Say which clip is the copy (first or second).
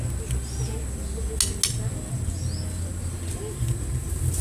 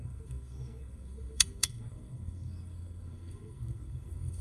second